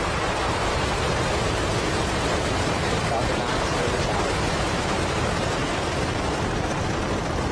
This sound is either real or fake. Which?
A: fake